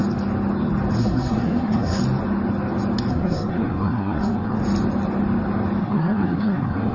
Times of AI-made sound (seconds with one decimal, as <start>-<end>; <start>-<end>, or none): 1.0-2.0; 3.1-4.6; 5.8-6.9